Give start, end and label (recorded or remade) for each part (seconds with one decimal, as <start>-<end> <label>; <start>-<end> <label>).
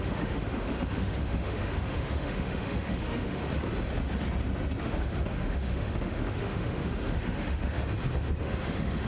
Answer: 0.0-3.4 remade; 3.4-4.8 recorded; 4.8-7.8 remade; 7.8-8.4 recorded; 8.4-9.1 remade